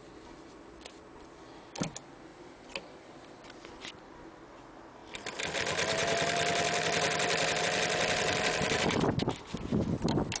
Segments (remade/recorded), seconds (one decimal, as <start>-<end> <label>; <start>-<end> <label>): 0.0-5.0 recorded; 5.0-7.6 remade; 7.6-10.4 recorded